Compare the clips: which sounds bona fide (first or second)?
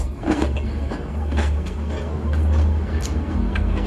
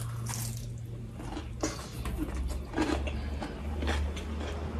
second